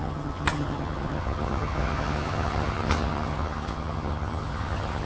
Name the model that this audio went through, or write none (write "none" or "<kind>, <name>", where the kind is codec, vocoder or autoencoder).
vocoder, HiFi-GAN